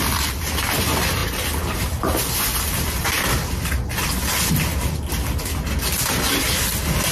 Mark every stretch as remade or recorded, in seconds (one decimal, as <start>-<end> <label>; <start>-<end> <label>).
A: 0.0-7.1 recorded